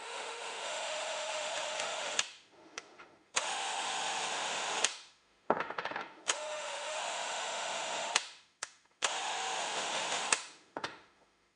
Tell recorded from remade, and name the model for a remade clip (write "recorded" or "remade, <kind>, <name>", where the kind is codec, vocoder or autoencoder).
remade, autoencoder, DAC-VAE